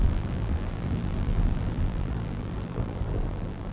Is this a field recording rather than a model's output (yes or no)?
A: no